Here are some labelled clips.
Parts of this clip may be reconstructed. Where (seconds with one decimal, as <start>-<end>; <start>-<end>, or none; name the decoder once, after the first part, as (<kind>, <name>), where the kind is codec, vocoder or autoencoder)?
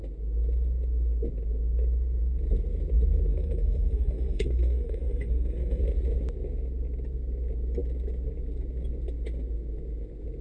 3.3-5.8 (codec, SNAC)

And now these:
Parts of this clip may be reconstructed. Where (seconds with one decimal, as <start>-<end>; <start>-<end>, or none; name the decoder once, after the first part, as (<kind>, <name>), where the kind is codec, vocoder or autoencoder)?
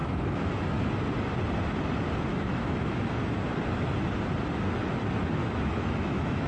0.0-0.9 (autoencoder, DAC-VAE); 2.3-2.9; 5.4-6.5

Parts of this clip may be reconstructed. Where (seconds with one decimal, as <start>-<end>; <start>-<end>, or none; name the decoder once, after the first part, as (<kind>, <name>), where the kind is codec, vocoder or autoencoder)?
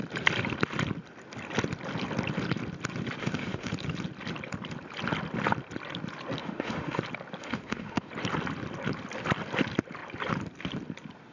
3.2-3.7 (autoencoder, DAC-VAE); 6.4-7.0; 7.4-8.1